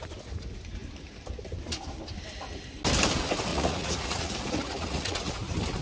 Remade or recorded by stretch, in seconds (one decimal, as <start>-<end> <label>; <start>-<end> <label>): 0.0-3.5 recorded; 3.5-5.3 remade; 5.3-5.8 recorded